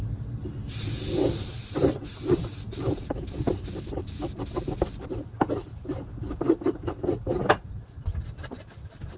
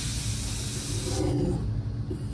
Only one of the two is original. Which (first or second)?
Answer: second